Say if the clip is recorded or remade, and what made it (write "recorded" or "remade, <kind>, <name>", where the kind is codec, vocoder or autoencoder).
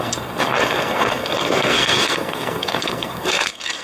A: remade, codec, SNAC